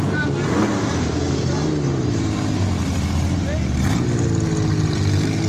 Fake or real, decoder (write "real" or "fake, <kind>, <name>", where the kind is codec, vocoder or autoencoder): real